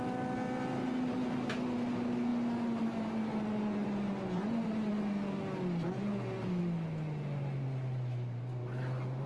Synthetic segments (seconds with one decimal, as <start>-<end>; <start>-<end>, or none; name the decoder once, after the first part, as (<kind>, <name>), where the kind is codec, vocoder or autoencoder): none

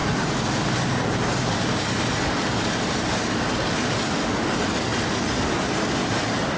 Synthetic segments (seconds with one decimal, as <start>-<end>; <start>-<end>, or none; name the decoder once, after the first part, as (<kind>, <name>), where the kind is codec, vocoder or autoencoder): none

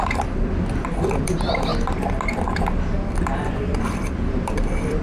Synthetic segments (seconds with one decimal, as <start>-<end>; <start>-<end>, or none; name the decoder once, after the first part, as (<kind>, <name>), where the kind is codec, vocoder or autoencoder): 0.0-1.7 (vocoder, BigVGAN v2); 3.8-5.0

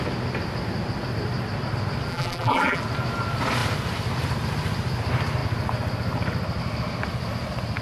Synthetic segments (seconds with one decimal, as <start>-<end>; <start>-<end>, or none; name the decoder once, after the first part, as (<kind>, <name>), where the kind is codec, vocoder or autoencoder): 2.1-2.8 (vocoder, BigVGAN v2)

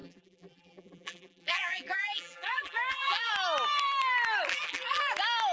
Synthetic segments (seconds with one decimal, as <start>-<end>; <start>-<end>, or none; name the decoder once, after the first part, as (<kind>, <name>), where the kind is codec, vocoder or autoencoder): 0.0-3.3 (vocoder, BigVGAN v2); 4.5-5.0

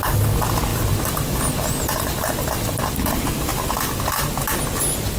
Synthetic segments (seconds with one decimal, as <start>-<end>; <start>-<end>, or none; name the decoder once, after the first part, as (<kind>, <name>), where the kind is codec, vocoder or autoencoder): 0.7-2.8 (vocoder, BigVGAN v2); 3.5-4.0

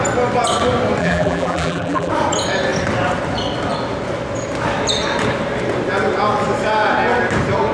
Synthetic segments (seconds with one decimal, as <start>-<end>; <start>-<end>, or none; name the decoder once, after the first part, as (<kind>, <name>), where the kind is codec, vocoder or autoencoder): 1.0-2.1 (vocoder, BigVGAN v2)

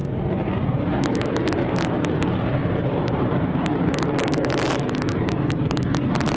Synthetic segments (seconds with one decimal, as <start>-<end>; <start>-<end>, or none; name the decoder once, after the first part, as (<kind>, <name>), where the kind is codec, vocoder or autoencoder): 2.6-5.9 (vocoder, BigVGAN v2)